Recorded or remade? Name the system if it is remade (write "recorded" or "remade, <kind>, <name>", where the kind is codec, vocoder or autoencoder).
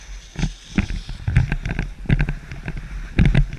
recorded